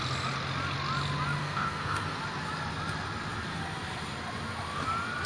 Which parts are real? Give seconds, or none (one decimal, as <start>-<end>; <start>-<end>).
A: 0.0-1.4; 2.2-5.3